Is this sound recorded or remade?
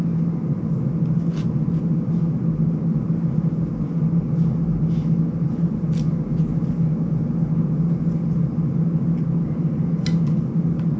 recorded